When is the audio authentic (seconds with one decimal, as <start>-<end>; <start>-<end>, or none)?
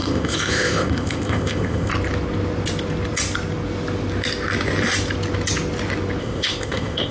1.9-6.2